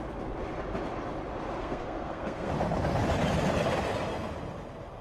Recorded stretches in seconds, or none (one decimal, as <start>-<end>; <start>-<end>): 0.0-1.6; 2.5-5.0

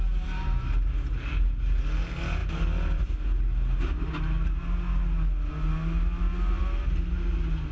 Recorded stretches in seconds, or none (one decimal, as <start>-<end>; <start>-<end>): 0.0-7.7

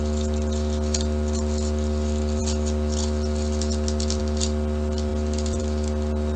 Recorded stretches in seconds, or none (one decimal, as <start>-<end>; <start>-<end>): 0.0-6.4

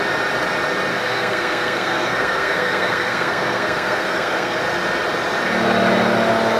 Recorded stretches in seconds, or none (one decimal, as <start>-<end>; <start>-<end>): 0.0-0.9; 4.6-6.6

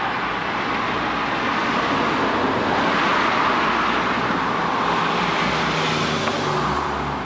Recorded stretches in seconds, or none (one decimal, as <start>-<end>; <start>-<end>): 0.0-7.2

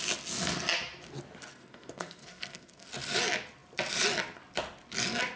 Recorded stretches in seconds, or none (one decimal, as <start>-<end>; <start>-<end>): 0.0-1.5; 2.9-5.4

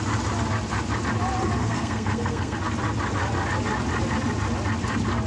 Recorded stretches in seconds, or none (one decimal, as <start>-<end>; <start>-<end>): 0.0-1.6; 2.6-5.3